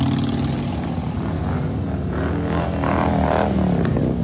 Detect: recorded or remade recorded